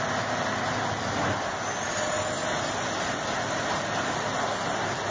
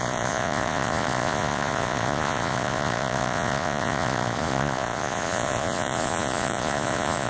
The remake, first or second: second